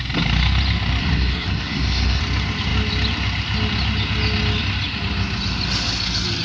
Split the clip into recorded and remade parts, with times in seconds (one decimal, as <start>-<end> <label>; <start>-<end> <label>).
0.0-1.0 recorded; 1.0-2.2 remade; 2.2-6.4 recorded